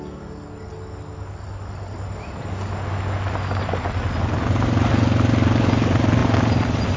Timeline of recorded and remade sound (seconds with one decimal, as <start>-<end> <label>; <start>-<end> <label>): 0.0-7.0 recorded